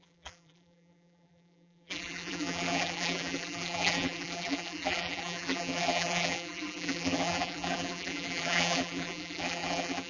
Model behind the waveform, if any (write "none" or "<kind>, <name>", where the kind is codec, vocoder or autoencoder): vocoder, BigVGAN v2